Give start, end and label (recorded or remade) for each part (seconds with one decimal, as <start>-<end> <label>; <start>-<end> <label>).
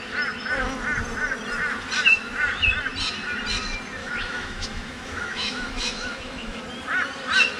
0.0-4.0 recorded; 4.0-6.6 remade; 6.6-7.6 recorded